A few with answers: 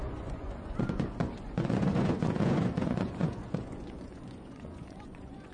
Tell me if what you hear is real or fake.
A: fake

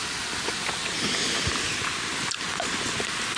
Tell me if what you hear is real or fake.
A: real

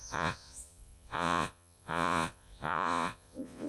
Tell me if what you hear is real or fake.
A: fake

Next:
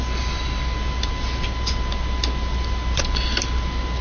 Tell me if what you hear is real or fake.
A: real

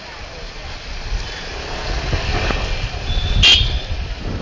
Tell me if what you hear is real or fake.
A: real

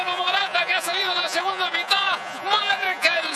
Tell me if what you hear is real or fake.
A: fake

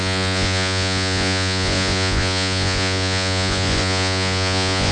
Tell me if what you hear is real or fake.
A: fake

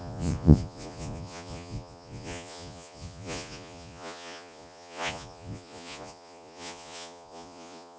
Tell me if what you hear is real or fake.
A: fake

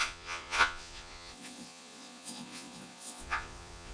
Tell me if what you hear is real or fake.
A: fake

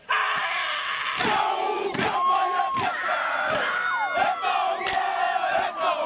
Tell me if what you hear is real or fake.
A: real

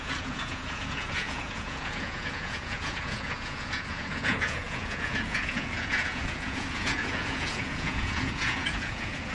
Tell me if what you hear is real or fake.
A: fake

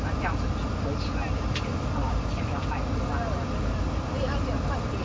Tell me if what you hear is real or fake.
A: real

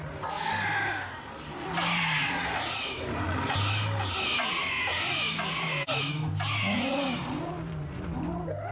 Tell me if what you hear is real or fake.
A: real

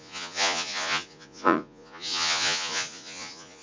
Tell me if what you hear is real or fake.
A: fake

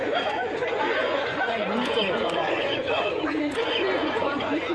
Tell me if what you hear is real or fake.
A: fake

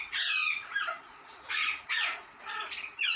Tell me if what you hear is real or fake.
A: fake